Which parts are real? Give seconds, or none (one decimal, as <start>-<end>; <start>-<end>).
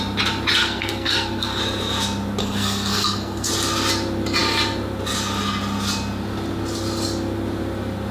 0.0-0.6; 1.6-2.4; 3.5-8.1